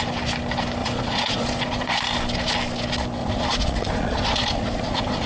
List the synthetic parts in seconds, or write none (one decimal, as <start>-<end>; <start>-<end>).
0.8-1.9; 3.2-5.3